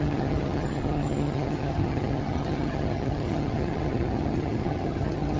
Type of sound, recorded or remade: remade